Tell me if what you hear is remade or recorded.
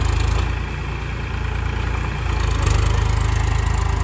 recorded